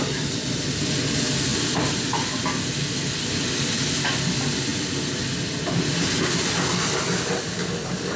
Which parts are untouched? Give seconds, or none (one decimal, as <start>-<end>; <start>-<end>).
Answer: 0.0-8.2